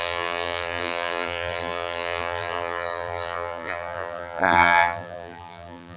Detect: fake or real fake